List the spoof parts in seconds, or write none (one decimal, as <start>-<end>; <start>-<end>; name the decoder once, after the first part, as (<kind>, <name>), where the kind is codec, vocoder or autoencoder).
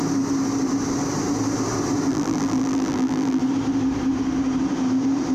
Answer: 2.1-3.4 (vocoder, BigVGAN v2)